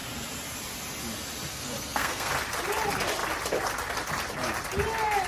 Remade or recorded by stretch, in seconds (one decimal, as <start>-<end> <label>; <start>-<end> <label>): 0.0-1.5 recorded; 1.5-2.3 remade; 2.3-5.3 recorded